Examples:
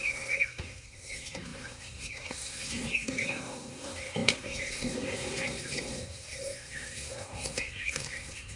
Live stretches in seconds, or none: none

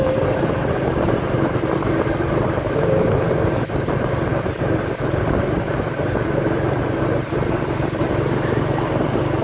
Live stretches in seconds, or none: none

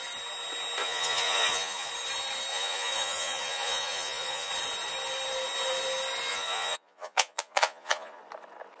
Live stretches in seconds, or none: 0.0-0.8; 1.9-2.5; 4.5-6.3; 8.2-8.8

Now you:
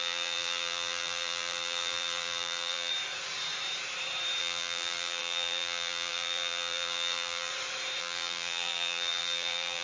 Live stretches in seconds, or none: 2.9-4.4; 7.5-8.0